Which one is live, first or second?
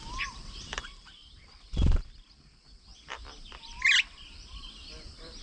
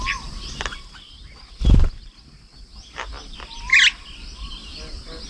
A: second